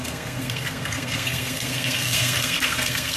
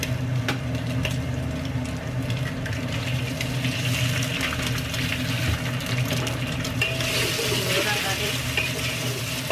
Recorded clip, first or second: second